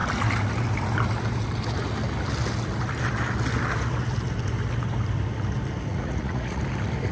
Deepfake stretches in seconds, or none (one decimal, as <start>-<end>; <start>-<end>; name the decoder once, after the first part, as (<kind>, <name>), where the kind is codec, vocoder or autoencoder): 5.9-6.6 (vocoder, Vocos)